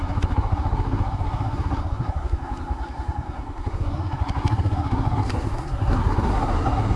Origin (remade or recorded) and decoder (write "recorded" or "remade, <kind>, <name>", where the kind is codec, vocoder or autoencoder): remade, codec, SNAC